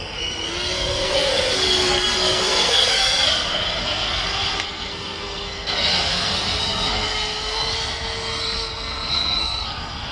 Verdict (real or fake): fake